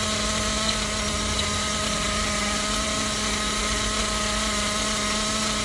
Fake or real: real